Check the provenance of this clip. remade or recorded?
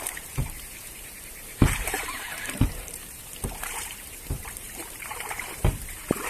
remade